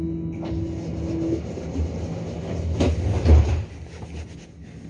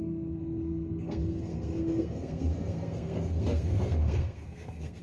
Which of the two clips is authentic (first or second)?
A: first